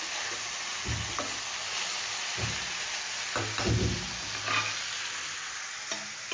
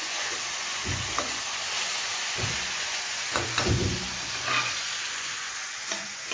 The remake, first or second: second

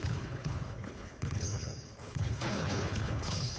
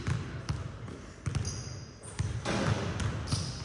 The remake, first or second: first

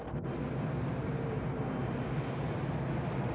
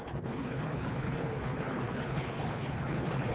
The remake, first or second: second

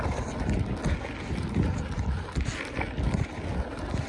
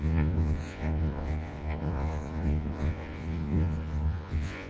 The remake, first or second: second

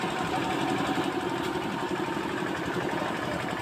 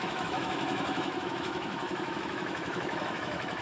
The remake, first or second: second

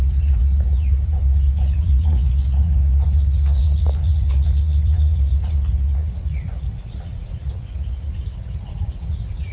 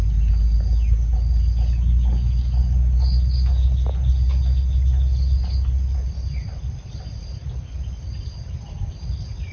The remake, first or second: first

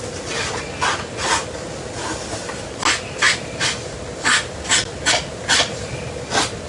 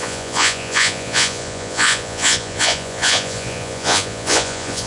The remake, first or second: second